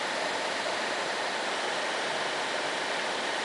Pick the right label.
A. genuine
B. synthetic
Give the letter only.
A